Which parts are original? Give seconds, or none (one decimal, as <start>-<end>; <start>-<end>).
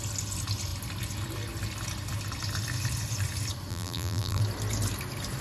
0.0-3.7; 4.4-5.4